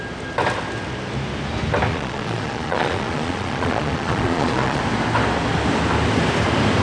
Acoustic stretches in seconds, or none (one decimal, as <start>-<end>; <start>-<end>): 0.0-1.9; 4.8-6.8